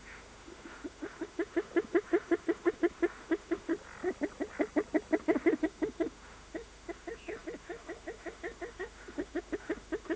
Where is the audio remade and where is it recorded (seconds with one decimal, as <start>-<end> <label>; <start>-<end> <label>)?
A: 0.0-3.7 remade; 3.7-5.2 recorded; 5.2-10.2 remade